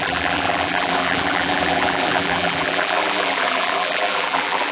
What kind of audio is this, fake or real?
fake